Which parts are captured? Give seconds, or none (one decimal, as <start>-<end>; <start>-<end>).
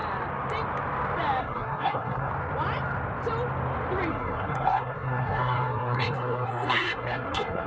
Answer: 0.0-1.4; 2.3-4.1